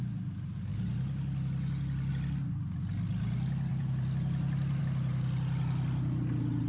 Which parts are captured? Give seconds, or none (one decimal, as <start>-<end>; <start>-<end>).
0.0-0.7; 2.1-3.7; 4.8-6.7